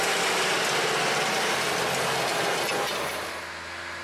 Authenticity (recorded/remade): recorded